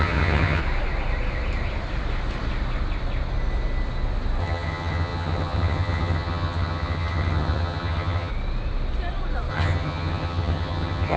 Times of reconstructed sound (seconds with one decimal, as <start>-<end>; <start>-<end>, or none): 0.0-0.6; 4.4-8.3; 9.5-11.2